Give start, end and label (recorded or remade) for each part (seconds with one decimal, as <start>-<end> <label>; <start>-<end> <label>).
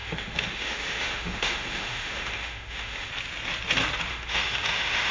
0.0-3.1 remade; 3.1-4.1 recorded; 4.1-5.1 remade